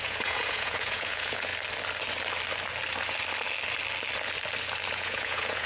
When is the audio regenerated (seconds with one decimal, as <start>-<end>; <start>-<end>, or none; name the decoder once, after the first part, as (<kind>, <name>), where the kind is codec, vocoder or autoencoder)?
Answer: 0.0-1.5 (vocoder, Vocos); 4.9-5.7